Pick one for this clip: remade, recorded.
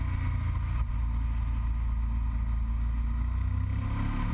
recorded